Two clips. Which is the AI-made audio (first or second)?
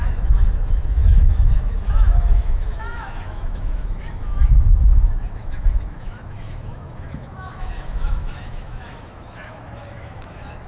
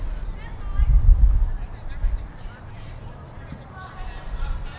first